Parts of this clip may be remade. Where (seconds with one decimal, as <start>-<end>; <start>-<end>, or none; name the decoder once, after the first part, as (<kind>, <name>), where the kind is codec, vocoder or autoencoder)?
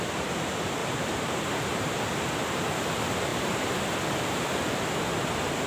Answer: 0.8-1.9 (vocoder, BigVGAN v2); 3.3-3.9